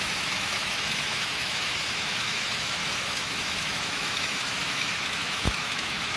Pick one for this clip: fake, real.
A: fake